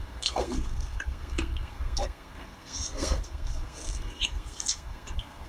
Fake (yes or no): yes